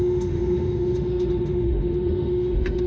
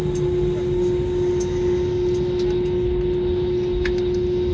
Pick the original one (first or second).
second